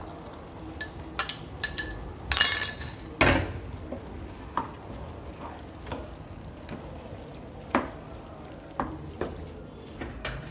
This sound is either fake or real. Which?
real